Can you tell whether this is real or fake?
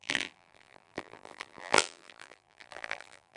fake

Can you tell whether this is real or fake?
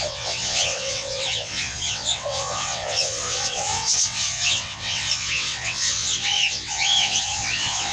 fake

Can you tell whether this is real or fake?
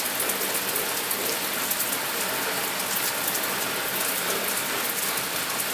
real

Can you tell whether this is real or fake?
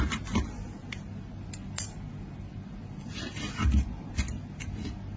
real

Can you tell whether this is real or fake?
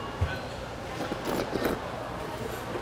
real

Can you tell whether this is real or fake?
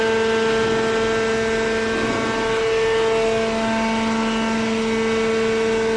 real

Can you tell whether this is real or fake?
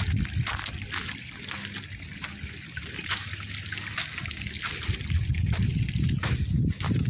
real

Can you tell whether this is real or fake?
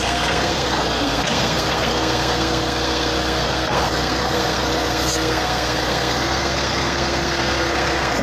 fake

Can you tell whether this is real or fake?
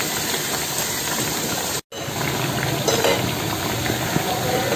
real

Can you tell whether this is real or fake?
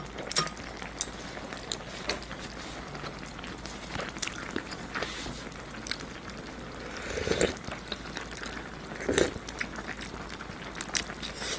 real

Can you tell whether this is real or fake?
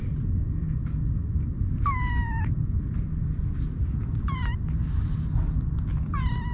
real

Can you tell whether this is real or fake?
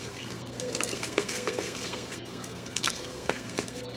fake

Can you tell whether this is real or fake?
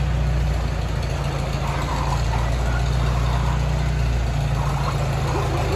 real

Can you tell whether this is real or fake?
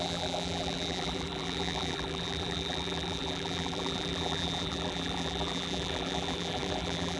fake